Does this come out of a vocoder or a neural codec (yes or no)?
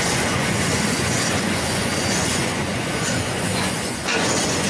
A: yes